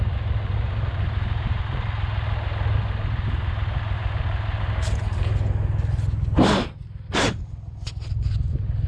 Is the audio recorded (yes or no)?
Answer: yes